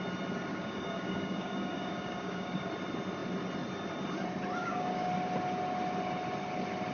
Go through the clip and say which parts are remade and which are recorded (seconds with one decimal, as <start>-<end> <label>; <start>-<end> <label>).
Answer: 0.0-0.5 recorded; 0.5-2.7 remade; 2.7-4.6 recorded; 4.6-5.1 remade; 5.1-6.9 recorded